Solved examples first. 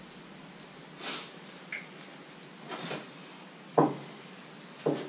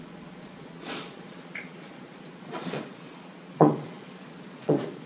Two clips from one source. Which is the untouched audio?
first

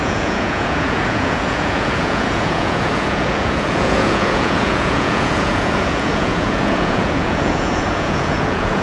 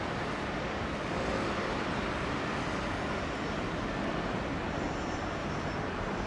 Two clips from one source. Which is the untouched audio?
second